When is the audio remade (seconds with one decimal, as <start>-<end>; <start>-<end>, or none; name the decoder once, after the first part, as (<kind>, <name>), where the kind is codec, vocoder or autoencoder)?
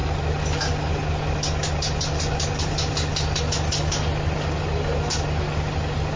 none